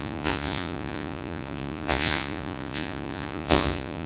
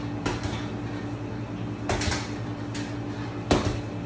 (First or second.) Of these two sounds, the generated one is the first